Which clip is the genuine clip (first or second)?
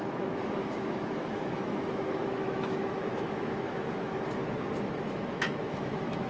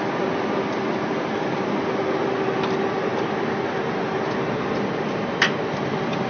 second